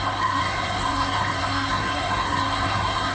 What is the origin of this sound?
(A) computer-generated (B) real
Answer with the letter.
A